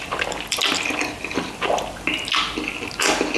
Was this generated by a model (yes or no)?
no